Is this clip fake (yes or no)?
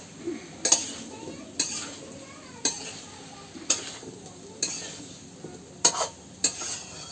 no